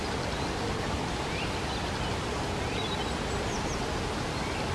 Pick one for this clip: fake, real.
real